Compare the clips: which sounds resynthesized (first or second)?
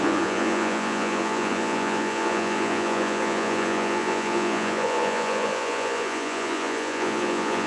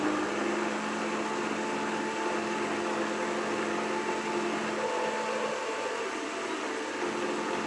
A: first